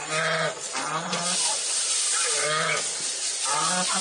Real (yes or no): yes